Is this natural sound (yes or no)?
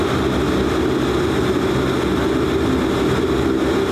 yes